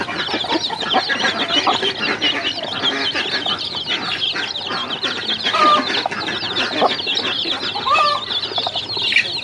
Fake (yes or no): no